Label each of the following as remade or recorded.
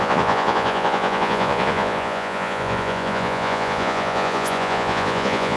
remade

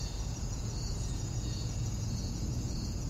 remade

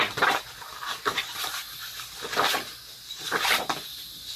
recorded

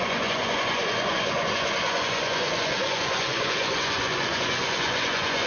remade